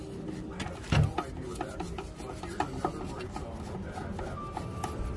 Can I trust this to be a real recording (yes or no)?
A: yes